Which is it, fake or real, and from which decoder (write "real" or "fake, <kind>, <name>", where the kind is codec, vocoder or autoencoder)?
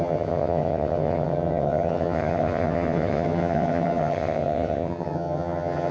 fake, vocoder, HiFi-GAN